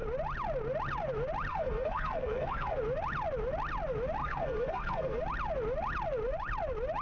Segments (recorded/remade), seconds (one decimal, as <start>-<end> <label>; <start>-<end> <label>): 0.0-1.5 recorded; 1.5-2.8 remade; 2.8-4.2 recorded; 4.2-5.2 remade; 5.2-7.0 recorded